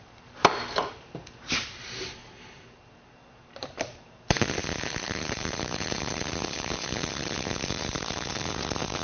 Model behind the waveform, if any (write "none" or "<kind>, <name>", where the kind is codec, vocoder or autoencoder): vocoder, BigVGAN v2